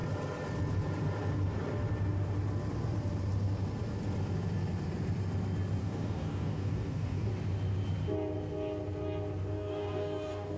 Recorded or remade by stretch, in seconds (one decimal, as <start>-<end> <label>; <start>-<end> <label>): 0.0-5.8 recorded; 5.8-7.3 remade; 7.3-9.5 recorded; 9.5-10.6 remade